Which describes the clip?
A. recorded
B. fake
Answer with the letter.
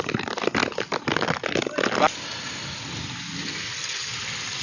A